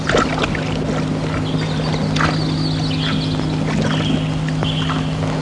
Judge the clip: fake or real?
real